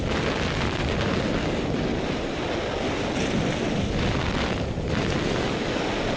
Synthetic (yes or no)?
no